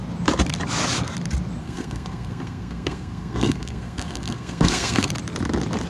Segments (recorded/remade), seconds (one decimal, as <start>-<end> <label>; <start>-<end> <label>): 0.0-1.6 recorded; 1.6-5.1 remade; 5.1-5.9 recorded